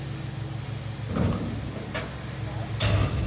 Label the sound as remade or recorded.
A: recorded